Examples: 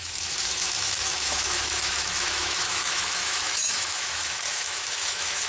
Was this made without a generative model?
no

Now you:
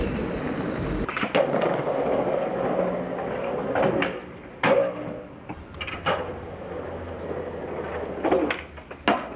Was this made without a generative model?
yes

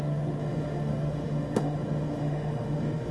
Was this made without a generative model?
no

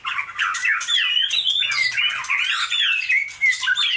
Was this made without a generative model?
yes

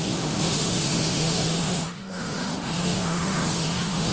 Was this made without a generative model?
no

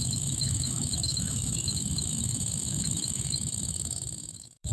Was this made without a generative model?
no